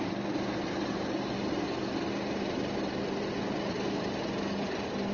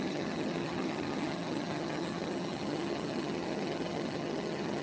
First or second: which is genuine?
first